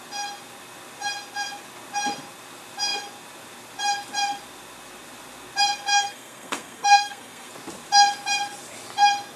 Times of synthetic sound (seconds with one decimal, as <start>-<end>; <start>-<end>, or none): 5.9-7.5